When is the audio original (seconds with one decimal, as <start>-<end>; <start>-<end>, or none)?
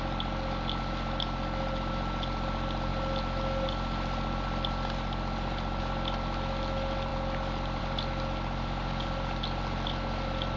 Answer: 0.0-10.6